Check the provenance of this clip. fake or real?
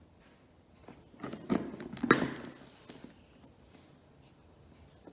real